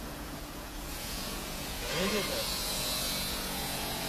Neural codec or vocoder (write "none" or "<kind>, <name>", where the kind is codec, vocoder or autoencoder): vocoder, Vocos